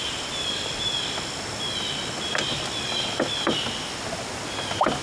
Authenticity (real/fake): real